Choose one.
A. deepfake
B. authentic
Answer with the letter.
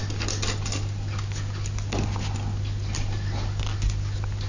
B